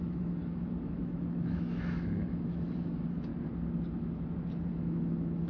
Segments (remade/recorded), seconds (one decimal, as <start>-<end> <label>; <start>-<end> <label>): 0.0-3.3 remade; 3.3-4.7 recorded; 4.7-5.5 remade